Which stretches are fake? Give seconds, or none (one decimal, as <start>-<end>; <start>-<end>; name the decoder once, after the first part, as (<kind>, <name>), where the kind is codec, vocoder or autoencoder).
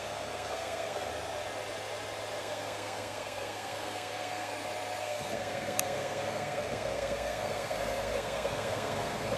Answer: 0.0-1.1 (codec, SNAC); 2.4-4.5; 5.0-9.4